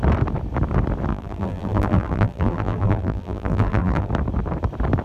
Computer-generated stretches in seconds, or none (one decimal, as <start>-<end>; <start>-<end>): 1.1-4.1